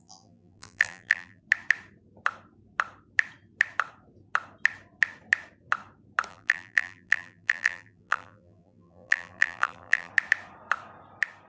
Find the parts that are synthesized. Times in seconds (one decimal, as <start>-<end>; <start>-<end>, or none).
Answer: 0.0-1.4; 6.3-10.1